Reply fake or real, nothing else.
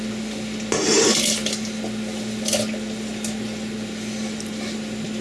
real